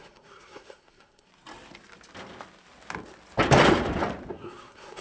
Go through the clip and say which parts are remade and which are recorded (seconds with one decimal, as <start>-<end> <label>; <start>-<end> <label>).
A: 0.0-1.3 remade; 1.3-4.3 recorded; 4.3-5.0 remade